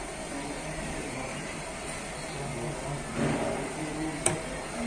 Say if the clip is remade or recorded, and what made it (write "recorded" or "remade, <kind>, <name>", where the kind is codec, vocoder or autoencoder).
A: recorded